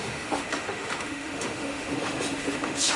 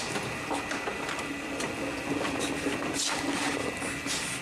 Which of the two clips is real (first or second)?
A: second